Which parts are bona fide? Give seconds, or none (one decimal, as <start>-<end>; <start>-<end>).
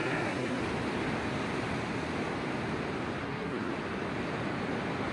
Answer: 0.6-3.2; 3.7-5.1